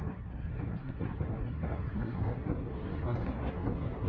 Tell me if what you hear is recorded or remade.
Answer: remade